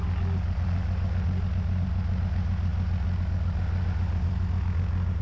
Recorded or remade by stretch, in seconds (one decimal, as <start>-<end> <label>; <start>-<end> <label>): 0.0-5.2 recorded

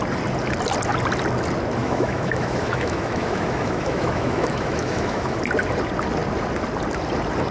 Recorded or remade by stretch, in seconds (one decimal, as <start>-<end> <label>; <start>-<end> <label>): 0.0-1.8 recorded; 1.8-5.4 remade; 5.4-7.5 recorded